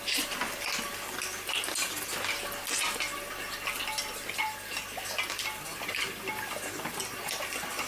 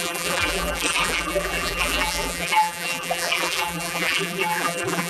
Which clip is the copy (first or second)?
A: second